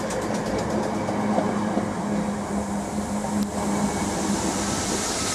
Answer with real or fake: real